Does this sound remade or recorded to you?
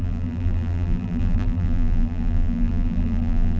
remade